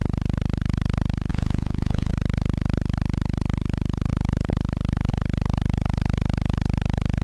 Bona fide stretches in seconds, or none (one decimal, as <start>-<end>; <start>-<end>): 0.0-1.3; 2.1-7.2